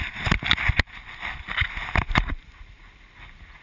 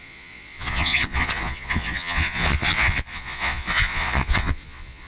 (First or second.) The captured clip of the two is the first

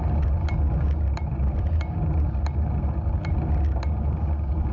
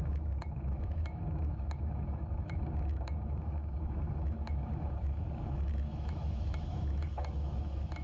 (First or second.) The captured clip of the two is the first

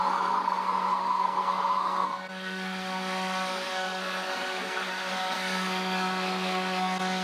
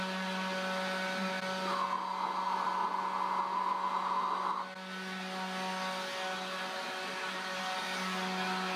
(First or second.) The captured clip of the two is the second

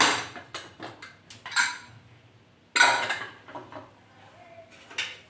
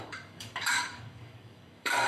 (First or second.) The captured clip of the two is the first